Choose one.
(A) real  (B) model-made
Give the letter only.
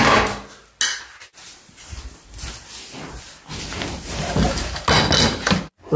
A